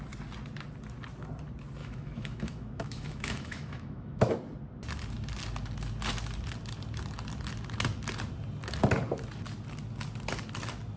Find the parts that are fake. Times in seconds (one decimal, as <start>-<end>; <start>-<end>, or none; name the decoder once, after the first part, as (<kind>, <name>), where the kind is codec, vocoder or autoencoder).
1.8-4.3 (autoencoder, DAC-VAE)